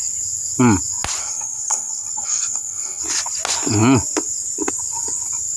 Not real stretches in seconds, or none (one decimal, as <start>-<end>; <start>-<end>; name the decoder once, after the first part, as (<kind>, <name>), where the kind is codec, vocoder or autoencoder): 1.2-3.0 (codec, SNAC)